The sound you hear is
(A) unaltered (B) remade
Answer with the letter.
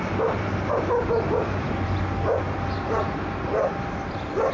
B